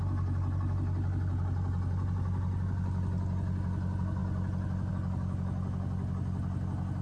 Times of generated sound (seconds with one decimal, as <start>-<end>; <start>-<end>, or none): none